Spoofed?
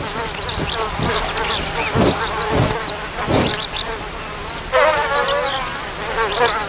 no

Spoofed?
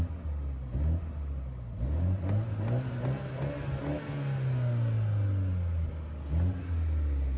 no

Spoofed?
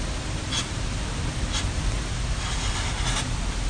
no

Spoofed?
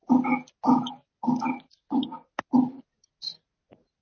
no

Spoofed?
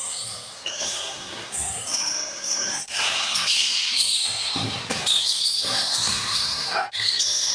yes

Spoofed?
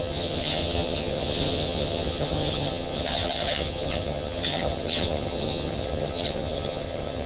yes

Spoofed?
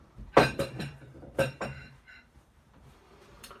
yes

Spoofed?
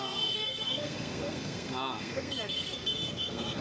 yes